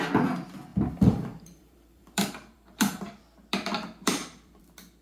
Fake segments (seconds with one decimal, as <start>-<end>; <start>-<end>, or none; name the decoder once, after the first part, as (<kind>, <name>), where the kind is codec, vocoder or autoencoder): 0.7-3.0 (vocoder, BigVGAN v2); 4.0-4.6